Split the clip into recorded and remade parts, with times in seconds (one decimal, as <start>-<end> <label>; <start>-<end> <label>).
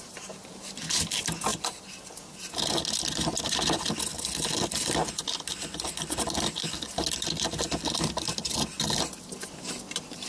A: 0.0-10.3 recorded